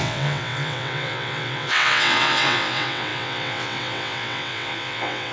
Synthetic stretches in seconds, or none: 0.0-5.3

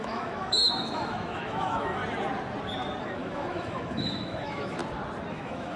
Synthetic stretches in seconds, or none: 0.0-2.0; 3.0-4.8; 5.3-5.8

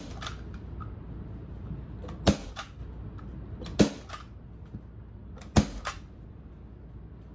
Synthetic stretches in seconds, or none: none

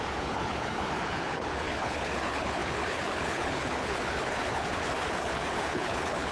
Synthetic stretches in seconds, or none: 0.0-6.3

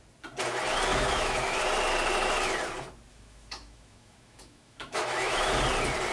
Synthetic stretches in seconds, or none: 0.9-1.6; 3.1-5.5

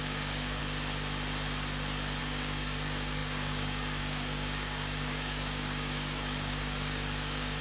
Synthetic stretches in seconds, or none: 0.0-0.6; 2.2-7.6

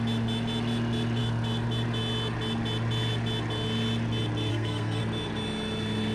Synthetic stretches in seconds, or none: 4.5-5.0

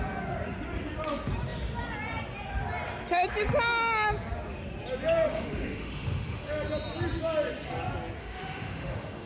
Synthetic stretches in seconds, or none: 5.3-6.5; 8.2-9.3